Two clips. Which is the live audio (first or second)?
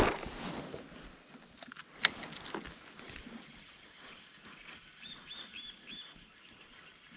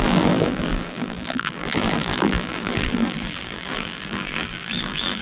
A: first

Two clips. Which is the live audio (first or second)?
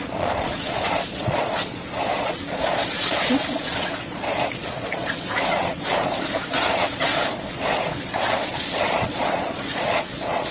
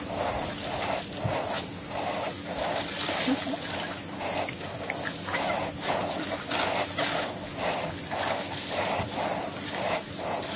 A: second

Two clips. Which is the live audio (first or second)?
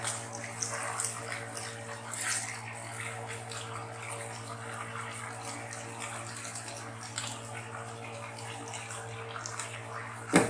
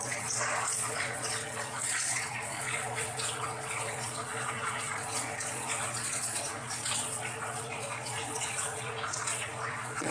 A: first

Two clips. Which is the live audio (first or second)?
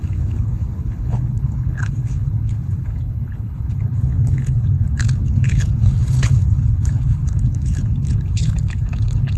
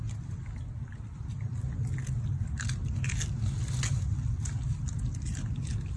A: second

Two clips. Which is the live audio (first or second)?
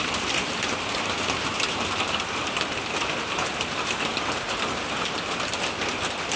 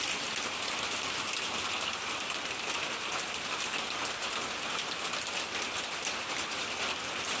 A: second